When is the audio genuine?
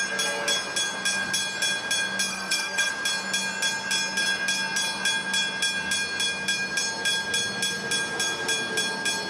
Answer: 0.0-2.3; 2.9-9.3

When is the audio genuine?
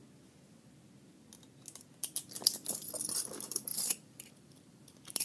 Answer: 0.0-3.1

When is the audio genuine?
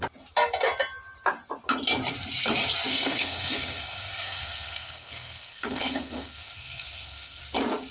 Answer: 0.0-2.9; 7.4-7.9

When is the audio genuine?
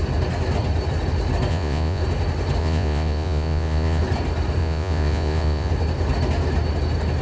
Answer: 0.0-1.5; 2.0-2.6; 4.0-4.6; 5.7-7.2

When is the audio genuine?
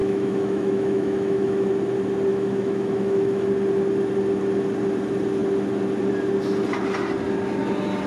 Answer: 1.7-2.3; 3.5-8.1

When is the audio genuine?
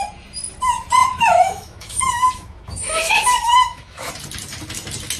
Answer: 0.0-1.0; 4.1-5.2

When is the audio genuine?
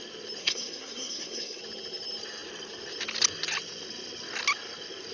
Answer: 0.0-0.4; 1.6-5.1